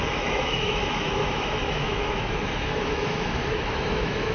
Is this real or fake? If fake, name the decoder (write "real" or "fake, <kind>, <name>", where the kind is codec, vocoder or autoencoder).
fake, autoencoder, DAC-VAE